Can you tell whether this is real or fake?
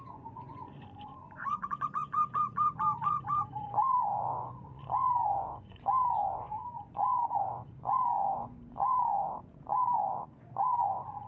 fake